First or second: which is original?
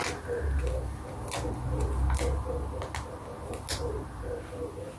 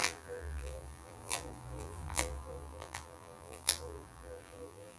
first